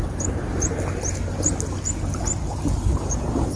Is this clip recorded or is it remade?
recorded